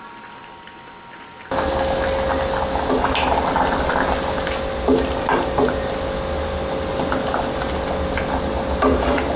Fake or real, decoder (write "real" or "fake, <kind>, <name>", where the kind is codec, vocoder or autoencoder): real